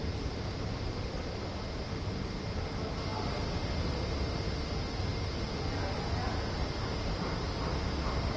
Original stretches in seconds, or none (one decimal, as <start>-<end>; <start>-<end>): 1.0-8.4